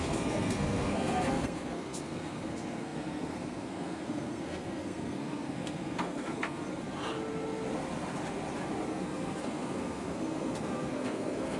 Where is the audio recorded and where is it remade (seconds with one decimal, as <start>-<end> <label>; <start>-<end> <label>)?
0.0-6.7 remade; 6.7-8.9 recorded; 8.9-11.6 remade

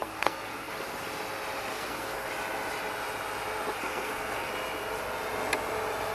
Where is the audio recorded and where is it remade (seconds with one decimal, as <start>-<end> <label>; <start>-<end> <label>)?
0.0-0.7 remade; 0.7-1.7 recorded; 1.7-2.3 remade; 2.3-3.8 recorded; 3.8-4.5 remade; 4.5-6.1 recorded

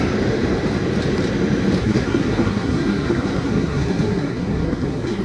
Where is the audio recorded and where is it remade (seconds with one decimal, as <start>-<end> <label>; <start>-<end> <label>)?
0.0-1.8 recorded; 1.8-5.2 remade

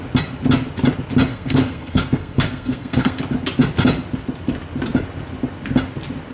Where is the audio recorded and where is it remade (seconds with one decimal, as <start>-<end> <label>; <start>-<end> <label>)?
0.0-1.3 recorded; 1.3-3.2 remade; 3.2-6.3 recorded